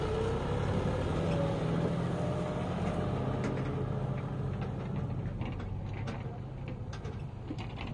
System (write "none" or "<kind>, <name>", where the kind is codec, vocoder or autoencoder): none